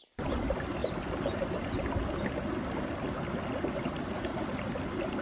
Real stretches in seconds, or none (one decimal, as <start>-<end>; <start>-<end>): 0.0-0.8; 1.8-4.3

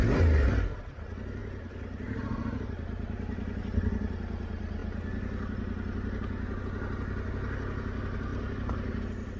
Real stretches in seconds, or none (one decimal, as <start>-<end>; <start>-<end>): 0.0-1.4; 3.6-8.3; 9.0-9.4